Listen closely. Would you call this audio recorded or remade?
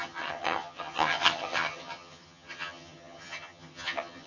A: remade